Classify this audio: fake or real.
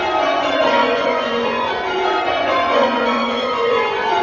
fake